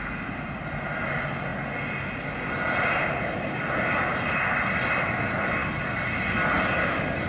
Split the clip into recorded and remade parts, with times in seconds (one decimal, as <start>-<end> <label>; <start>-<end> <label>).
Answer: 0.0-7.3 recorded